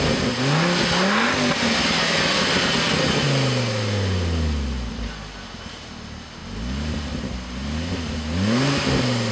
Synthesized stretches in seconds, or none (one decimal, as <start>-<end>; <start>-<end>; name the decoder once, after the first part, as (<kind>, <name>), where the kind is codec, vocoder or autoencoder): none